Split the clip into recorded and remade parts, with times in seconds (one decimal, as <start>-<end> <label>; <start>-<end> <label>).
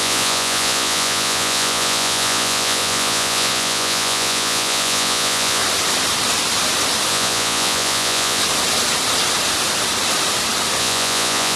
0.0-5.6 remade; 5.6-7.1 recorded; 7.1-8.4 remade; 8.4-10.8 recorded; 10.8-11.6 remade